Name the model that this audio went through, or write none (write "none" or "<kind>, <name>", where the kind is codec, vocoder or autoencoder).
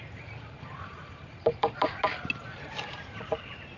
vocoder, BigVGAN v2